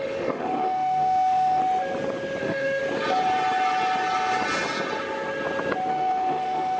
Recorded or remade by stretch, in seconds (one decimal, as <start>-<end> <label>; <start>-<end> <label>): 0.0-1.6 remade; 1.6-2.4 recorded; 2.4-2.8 remade; 2.8-5.9 recorded; 5.9-6.8 remade